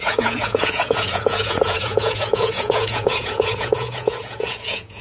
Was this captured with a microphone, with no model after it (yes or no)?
no